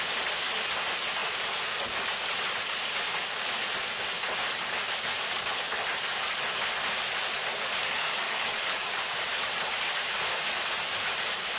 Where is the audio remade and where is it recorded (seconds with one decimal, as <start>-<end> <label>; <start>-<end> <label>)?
0.0-7.5 recorded; 7.5-8.9 remade; 8.9-11.6 recorded